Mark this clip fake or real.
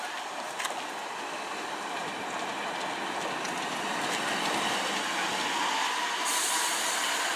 real